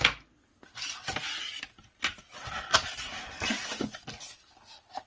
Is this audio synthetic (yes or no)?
no